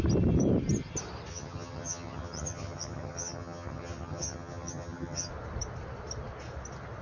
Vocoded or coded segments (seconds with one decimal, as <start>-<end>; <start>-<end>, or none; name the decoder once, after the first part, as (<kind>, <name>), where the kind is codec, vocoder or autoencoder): 1.3-5.3 (vocoder, HiFi-GAN)